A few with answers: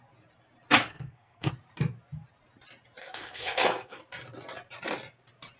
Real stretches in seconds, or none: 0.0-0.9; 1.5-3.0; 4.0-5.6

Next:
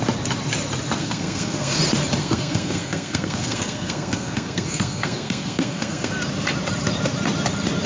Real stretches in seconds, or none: 0.0-1.0; 1.8-2.2; 6.1-7.9

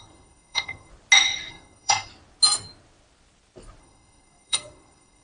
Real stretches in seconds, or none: 0.9-1.5; 2.1-3.8

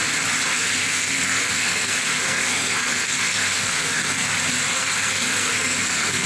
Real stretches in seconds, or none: 0.0-0.5; 4.3-4.7

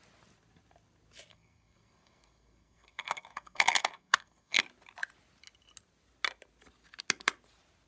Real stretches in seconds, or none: 0.0-1.3; 4.6-7.9

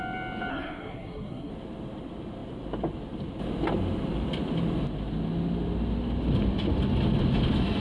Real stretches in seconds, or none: 0.0-0.5; 1.5-7.8

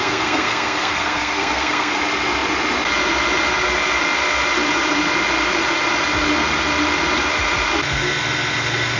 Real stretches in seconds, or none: 2.0-9.0